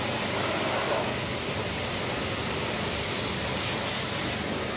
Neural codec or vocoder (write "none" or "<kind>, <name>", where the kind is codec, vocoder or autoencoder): none